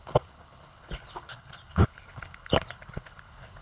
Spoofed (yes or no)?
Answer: yes